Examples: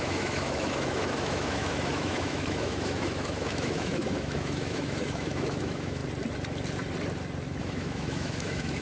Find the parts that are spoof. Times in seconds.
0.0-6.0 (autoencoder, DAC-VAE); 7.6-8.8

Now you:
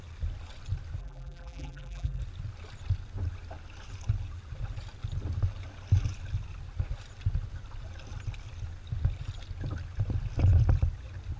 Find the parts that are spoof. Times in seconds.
1.0-2.2 (vocoder, BigVGAN v2)

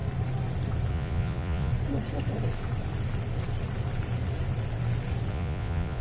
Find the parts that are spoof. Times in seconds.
0.9-1.7 (vocoder, Vocos); 5.3-6.0

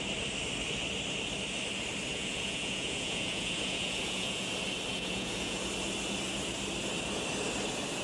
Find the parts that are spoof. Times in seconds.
2.1-4.5 (vocoder, Vocos); 4.9-5.7

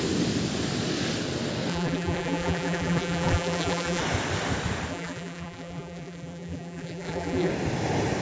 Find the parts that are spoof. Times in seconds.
1.7-4.0 (vocoder, BigVGAN v2); 4.9-7.5